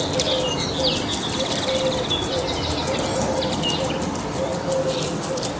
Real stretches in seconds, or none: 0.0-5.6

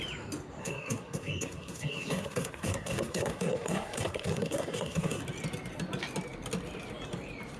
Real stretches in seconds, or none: 0.0-0.6; 5.2-7.6